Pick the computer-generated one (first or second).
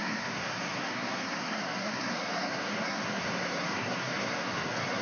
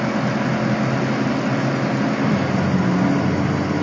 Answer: first